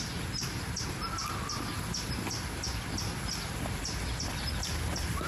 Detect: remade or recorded recorded